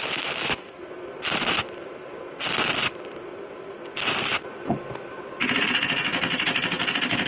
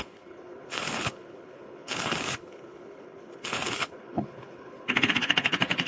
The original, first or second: first